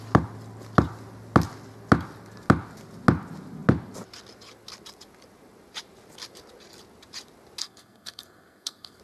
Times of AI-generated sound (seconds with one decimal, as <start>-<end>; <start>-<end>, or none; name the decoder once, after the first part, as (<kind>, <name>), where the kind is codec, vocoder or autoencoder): 7.6-9.0 (codec, SNAC)